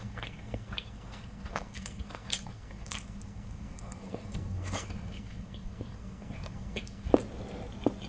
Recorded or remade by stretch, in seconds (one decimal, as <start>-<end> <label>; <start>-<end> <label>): 0.0-7.1 remade; 7.1-8.1 recorded